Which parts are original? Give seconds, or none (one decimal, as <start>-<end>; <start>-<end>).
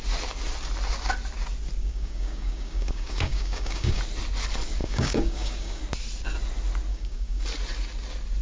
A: 0.0-1.8; 4.0-4.8; 5.8-6.9; 7.4-8.4